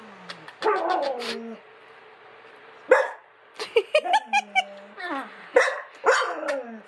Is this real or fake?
real